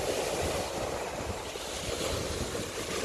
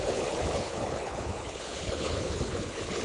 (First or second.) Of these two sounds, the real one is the first